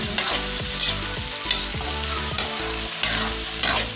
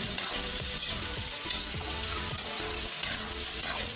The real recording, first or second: first